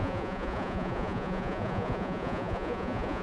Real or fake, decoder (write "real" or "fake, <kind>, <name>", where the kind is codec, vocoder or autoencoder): fake, vocoder, Vocos